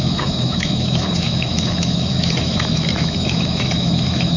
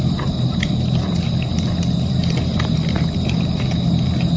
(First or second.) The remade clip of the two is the first